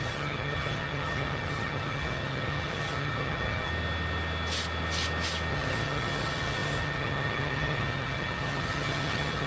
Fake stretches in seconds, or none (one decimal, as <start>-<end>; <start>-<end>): 0.0-3.7; 5.5-9.5